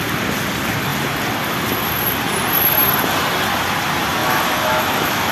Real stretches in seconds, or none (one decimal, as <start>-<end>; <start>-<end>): 0.0-4.2